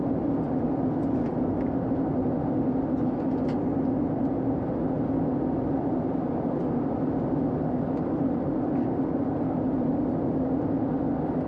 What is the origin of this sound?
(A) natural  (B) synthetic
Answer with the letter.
A